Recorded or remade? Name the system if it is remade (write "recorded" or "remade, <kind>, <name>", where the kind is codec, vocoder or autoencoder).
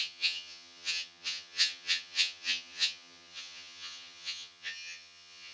remade, vocoder, HiFi-GAN